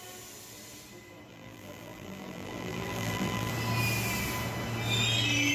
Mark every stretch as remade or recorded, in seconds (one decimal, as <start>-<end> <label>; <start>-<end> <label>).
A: 0.0-1.3 recorded; 1.3-3.5 remade; 3.5-5.5 recorded